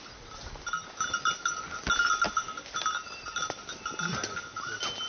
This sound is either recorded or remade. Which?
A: recorded